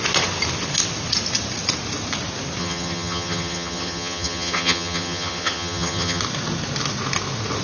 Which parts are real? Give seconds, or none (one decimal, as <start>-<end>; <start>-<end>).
0.0-2.6; 6.2-7.6